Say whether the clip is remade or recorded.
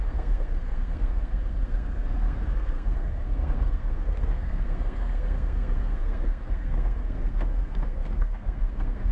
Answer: remade